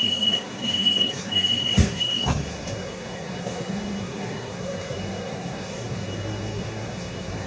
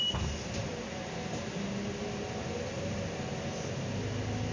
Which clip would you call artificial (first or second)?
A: first